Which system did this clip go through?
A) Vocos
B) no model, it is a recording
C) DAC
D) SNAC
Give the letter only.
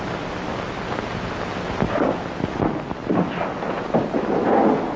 B